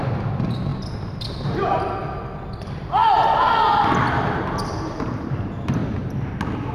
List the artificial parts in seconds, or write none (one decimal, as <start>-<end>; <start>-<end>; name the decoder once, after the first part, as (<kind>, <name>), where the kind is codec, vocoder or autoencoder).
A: none